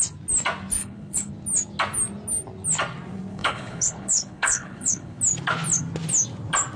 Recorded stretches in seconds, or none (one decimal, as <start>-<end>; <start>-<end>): 0.0-0.8; 1.3-3.3; 5.2-6.8